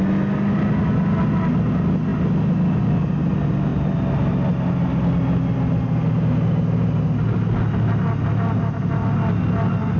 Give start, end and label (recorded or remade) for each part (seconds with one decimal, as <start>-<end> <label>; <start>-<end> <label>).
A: 0.0-10.0 recorded